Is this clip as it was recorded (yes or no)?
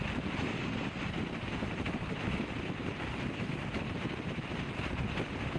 yes